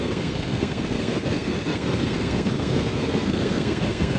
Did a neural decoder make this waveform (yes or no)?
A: yes